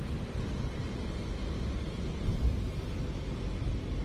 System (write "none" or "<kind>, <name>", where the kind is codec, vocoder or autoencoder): none